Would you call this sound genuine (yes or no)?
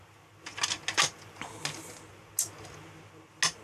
yes